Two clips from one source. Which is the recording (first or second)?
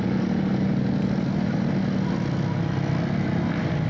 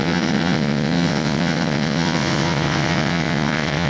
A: first